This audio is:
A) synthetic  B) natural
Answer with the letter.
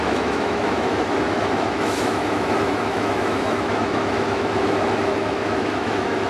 A